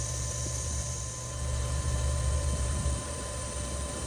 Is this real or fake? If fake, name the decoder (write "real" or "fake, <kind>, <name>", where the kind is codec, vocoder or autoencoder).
fake, vocoder, BigVGAN v2